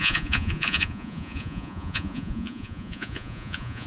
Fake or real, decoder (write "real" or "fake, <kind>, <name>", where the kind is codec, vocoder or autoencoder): fake, vocoder, Vocos